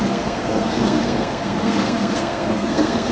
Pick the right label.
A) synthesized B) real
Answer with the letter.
A